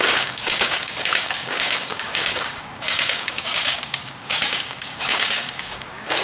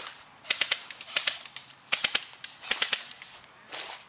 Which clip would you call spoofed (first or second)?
first